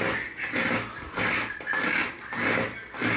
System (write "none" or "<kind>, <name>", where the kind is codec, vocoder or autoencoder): none